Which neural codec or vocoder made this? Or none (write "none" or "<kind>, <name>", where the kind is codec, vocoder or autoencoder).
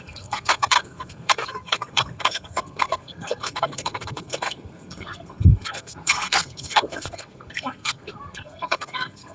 codec, SNAC